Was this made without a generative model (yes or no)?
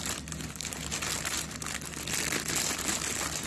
yes